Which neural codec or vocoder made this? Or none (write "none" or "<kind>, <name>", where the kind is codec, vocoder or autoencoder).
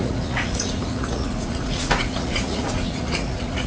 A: vocoder, Vocos